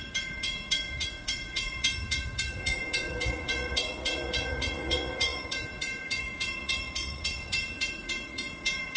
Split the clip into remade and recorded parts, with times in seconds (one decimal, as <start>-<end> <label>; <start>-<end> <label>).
0.0-9.0 remade